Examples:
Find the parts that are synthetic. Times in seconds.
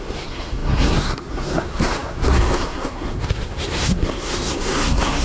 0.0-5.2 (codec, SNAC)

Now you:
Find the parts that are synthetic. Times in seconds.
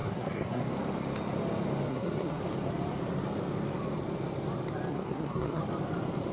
0.0-0.6 (codec, SNAC); 1.9-2.4; 4.9-5.6